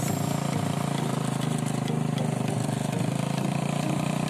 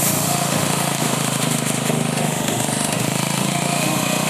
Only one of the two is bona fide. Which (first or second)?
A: first